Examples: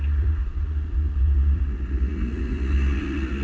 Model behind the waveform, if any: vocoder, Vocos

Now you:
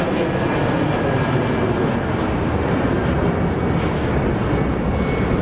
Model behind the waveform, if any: none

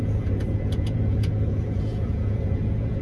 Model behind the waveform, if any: vocoder, Vocos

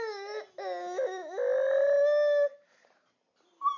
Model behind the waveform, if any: none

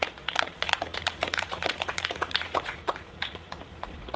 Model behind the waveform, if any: vocoder, Vocos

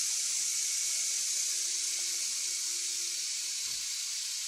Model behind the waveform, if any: none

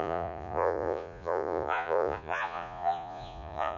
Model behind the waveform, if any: vocoder, Vocos